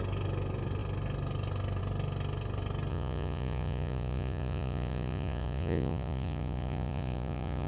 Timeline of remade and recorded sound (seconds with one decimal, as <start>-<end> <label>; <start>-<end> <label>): 0.0-2.9 recorded; 2.9-7.7 remade